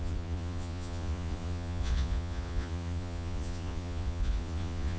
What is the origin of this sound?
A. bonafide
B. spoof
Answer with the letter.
B